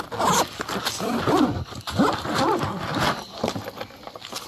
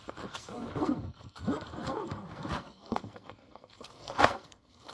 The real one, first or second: first